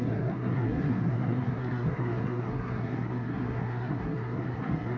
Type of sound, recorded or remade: remade